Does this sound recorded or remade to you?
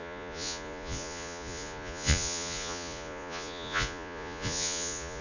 remade